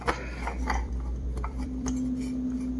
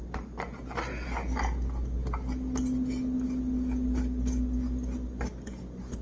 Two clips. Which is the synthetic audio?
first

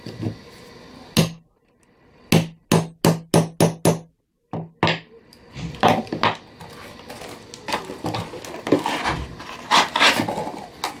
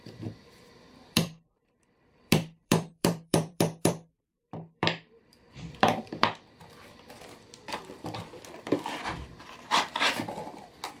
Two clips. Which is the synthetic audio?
second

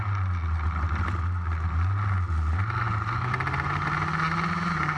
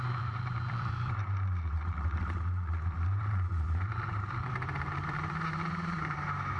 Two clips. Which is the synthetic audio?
second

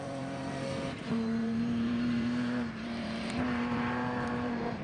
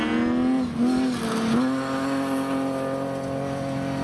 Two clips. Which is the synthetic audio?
first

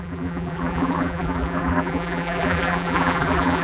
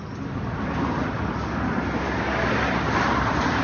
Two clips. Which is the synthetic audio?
first